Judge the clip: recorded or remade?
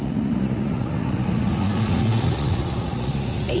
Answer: remade